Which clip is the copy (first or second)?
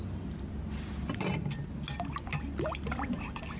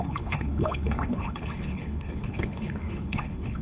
second